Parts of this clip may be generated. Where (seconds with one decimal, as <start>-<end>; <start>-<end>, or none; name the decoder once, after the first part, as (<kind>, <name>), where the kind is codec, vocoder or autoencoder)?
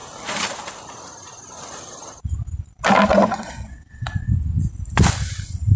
3.1-4.1 (vocoder, WaveNeXt)